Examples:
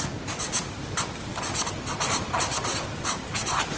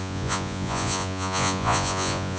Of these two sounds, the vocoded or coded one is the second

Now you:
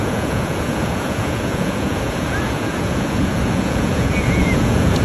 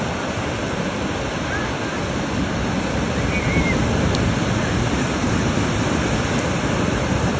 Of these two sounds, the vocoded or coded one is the first